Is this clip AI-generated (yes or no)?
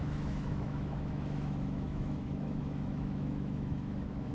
yes